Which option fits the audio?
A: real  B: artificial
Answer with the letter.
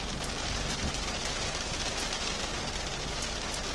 A